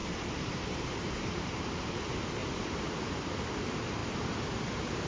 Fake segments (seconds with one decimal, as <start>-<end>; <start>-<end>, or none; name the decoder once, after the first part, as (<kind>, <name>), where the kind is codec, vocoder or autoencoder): 0.0-1.9 (vocoder, BigVGAN v2)